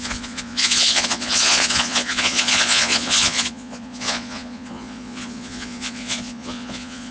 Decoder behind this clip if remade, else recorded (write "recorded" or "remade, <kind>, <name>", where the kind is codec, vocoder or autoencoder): remade, vocoder, Vocos